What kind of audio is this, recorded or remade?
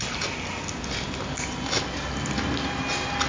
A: recorded